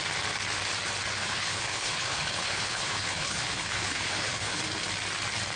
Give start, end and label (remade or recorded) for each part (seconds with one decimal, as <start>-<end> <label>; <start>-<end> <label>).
0.0-1.2 recorded; 1.2-4.6 remade; 4.6-5.6 recorded